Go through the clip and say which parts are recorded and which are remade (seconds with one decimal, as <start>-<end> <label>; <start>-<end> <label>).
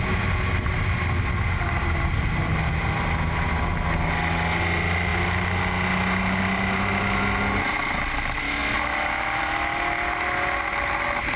0.0-11.4 recorded